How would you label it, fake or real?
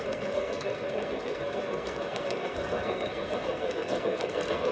fake